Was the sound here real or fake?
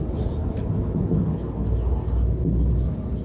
real